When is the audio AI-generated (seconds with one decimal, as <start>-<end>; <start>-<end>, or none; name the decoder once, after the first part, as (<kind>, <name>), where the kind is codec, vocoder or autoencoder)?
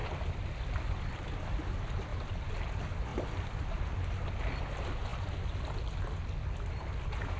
0.0-0.6 (vocoder, BigVGAN v2); 3.1-3.7